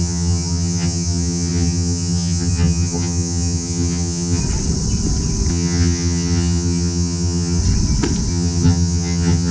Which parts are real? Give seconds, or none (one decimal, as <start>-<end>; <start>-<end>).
4.4-5.5; 7.6-8.3